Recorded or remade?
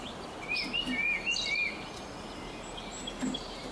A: recorded